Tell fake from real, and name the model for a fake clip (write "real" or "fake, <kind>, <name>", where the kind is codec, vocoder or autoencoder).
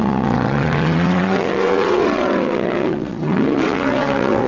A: fake, vocoder, WaveNeXt